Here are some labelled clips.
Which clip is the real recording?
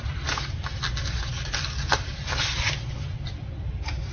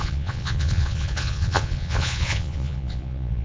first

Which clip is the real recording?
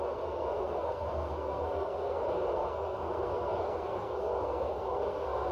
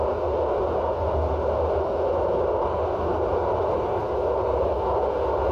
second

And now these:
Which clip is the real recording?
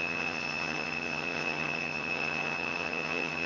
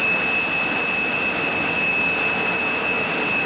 second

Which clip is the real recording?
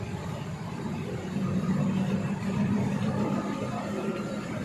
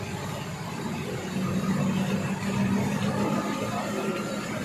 second